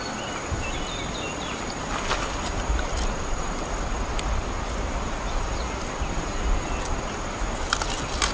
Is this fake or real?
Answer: real